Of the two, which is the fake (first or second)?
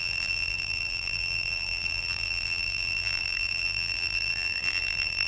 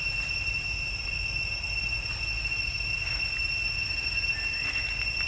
first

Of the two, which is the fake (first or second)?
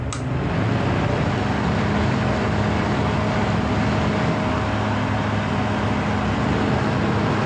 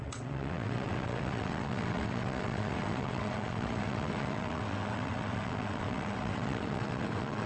second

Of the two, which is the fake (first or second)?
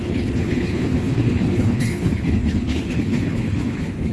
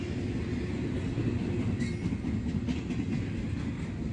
first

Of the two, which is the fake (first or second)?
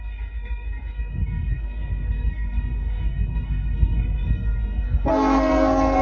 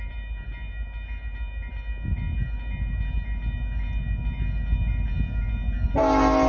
first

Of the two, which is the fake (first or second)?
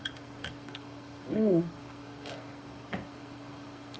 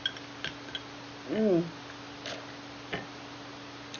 first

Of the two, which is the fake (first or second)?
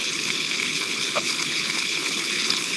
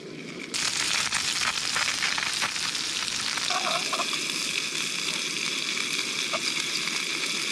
first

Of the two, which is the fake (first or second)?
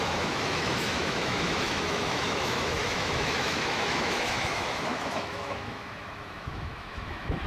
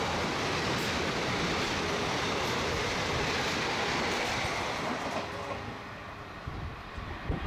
first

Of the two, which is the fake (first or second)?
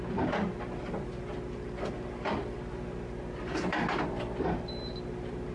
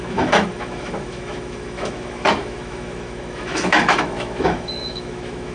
second